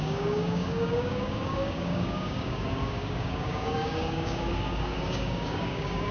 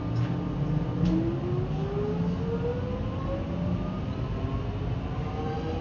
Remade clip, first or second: first